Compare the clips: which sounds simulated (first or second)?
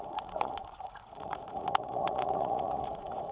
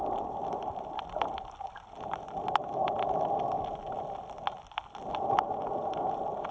first